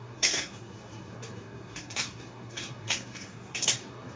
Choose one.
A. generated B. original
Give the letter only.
A